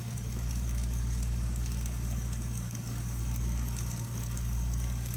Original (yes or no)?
no